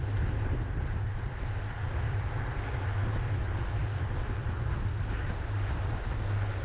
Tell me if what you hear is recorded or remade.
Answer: recorded